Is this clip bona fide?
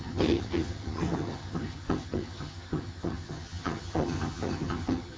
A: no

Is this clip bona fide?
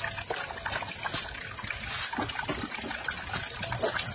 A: yes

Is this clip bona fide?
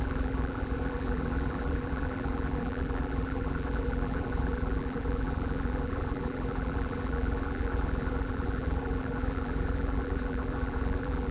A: no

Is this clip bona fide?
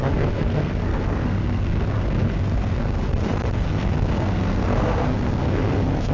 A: no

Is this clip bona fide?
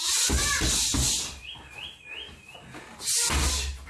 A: yes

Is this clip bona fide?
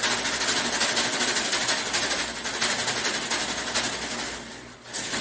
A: yes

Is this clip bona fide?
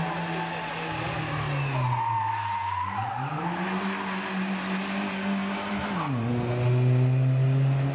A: yes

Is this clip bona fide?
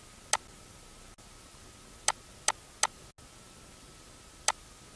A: yes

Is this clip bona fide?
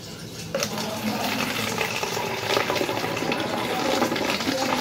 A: no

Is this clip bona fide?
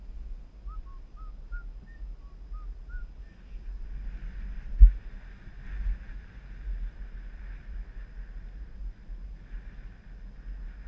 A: yes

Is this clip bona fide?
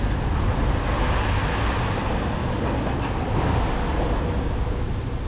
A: yes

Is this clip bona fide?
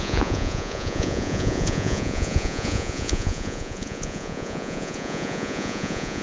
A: no